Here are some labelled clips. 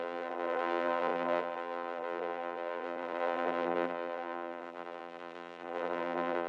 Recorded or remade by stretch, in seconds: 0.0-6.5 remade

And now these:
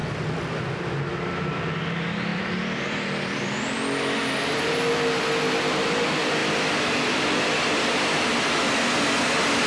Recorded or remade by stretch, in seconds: 0.0-0.8 remade; 0.8-2.3 recorded; 2.3-3.7 remade; 3.7-6.4 recorded; 6.4-7.3 remade; 7.3-9.7 recorded

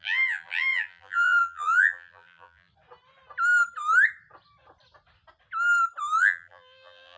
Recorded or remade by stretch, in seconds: 0.0-2.7 remade; 2.7-6.2 recorded; 6.2-7.2 remade

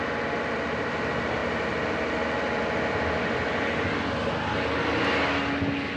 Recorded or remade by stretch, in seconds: 0.0-6.0 recorded